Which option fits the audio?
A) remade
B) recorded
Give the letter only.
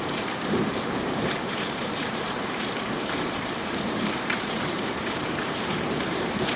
A